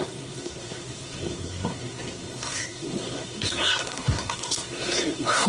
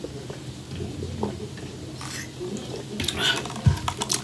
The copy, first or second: first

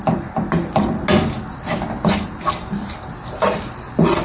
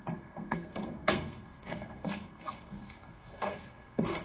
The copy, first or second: second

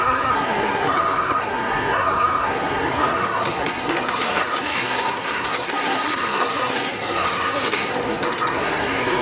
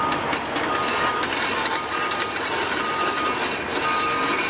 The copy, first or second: first